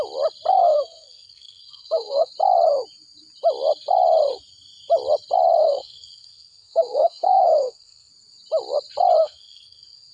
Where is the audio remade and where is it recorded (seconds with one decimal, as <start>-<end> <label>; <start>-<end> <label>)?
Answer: 0.0-0.5 recorded; 0.5-2.3 remade; 2.3-5.6 recorded; 5.6-8.1 remade; 8.1-9.2 recorded; 9.2-10.1 remade